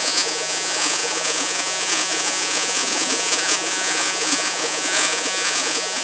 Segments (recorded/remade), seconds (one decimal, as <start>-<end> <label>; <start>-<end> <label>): 0.0-6.0 remade